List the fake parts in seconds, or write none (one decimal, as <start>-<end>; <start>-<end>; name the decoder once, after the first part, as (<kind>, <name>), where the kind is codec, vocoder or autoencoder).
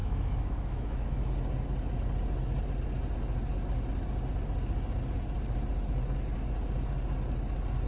0.0-1.3 (autoencoder, DAC-VAE)